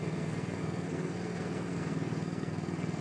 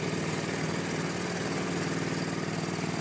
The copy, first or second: first